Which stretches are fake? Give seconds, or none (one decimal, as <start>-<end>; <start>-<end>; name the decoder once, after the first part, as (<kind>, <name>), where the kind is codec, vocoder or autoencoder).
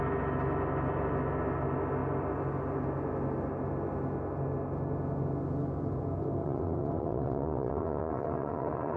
6.4-9.0 (vocoder, WaveNeXt)